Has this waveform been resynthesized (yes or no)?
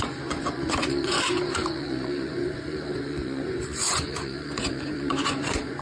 yes